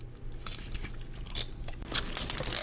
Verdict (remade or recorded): recorded